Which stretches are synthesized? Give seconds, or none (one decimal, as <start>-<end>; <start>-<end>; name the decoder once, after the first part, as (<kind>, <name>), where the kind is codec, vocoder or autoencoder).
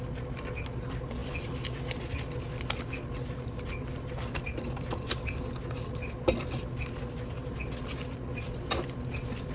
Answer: none